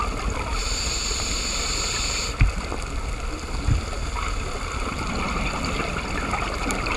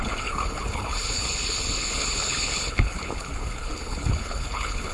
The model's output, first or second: second